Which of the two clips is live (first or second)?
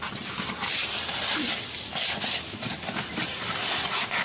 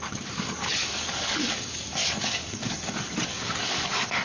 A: first